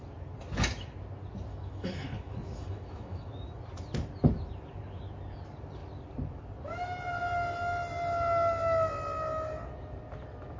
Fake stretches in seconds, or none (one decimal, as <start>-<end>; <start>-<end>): 1.5-3.3

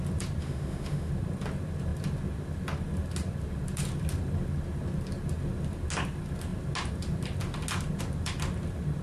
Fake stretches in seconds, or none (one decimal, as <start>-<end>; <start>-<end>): 0.4-1.1